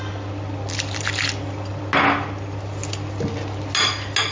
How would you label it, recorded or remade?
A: recorded